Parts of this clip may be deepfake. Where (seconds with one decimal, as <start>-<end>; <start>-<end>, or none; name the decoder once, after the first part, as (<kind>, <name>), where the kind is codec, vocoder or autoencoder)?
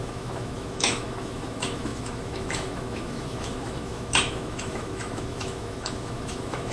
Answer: 0.0-6.7 (autoencoder, DAC-VAE)